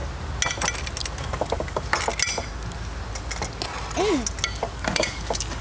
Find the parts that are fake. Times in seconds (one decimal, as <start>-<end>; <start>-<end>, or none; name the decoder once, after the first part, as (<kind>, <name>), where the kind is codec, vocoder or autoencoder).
1.2-1.9 (codec, DAC); 4.6-5.6